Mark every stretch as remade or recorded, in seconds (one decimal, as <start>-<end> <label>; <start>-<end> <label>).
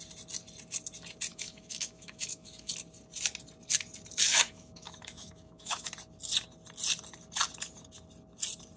0.0-1.3 recorded; 1.3-2.7 remade; 2.7-4.3 recorded; 4.3-5.9 remade; 5.9-8.8 recorded